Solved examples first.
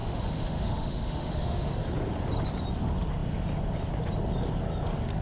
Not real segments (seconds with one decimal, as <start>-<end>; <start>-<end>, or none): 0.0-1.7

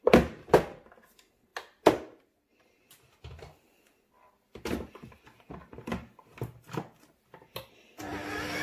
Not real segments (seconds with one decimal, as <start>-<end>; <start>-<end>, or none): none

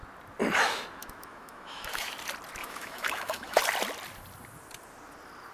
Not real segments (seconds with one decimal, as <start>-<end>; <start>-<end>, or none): 1.0-2.1; 2.6-3.6